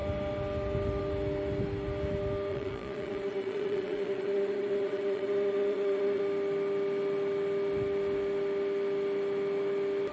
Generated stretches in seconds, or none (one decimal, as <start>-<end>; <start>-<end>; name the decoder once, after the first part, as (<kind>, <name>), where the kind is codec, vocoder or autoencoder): 2.5-6.2 (vocoder, Vocos)